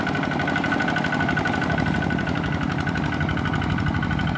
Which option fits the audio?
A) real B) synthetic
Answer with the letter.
A